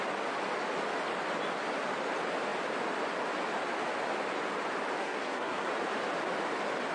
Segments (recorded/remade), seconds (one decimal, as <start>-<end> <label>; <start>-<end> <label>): 0.0-5.0 recorded; 5.0-5.7 remade; 5.7-6.9 recorded

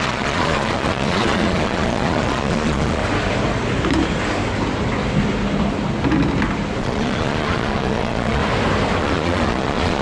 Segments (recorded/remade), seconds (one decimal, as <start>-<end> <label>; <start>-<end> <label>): 0.0-3.0 remade; 3.0-6.8 recorded; 6.8-8.4 remade; 8.4-9.0 recorded; 9.0-10.0 remade

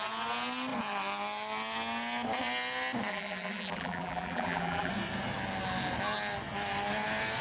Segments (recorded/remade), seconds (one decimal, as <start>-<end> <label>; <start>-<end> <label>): 0.0-3.1 recorded; 3.1-4.9 remade; 4.9-7.4 recorded

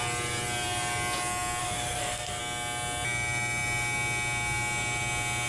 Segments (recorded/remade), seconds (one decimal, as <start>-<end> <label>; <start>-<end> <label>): 0.0-1.6 recorded; 1.6-2.4 remade; 2.4-5.5 recorded

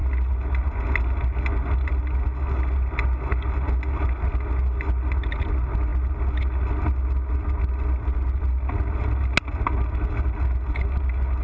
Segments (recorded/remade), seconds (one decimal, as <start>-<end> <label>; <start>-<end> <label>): 0.0-11.4 recorded

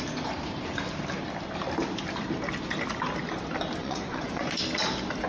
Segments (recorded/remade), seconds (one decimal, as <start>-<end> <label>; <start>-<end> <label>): 0.0-3.8 recorded; 3.8-4.6 remade; 4.6-5.3 recorded